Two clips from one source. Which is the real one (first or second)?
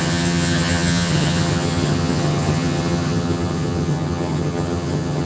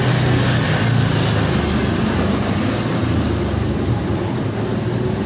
second